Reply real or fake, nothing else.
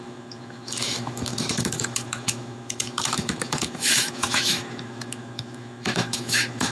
fake